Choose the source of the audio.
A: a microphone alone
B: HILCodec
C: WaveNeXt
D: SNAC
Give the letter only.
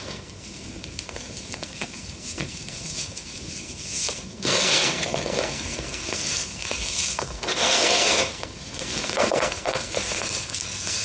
D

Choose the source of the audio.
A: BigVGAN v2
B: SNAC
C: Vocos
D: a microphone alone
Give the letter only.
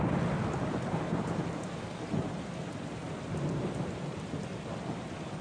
D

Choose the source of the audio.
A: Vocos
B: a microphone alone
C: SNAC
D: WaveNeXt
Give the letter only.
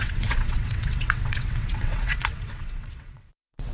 D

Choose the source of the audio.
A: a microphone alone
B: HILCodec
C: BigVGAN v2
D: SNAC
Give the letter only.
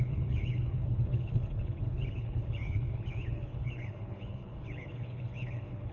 B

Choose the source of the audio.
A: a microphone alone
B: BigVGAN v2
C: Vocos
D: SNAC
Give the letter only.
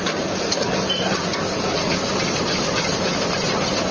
A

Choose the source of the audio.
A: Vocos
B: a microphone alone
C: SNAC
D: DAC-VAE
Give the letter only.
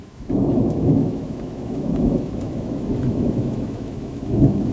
D